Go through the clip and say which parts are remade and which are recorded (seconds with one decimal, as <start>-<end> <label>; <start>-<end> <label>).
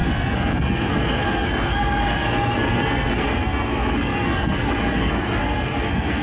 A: 0.0-6.2 remade